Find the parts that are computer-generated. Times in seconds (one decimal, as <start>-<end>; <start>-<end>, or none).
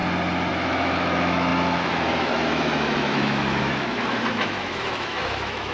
0.5-5.7